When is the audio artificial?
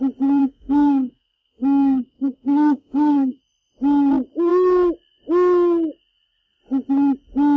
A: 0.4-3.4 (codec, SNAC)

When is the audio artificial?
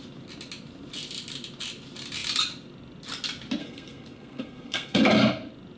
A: 3.6-5.0 (codec, SNAC)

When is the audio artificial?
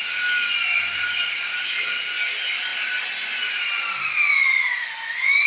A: none